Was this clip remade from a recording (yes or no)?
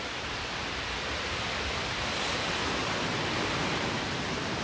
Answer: no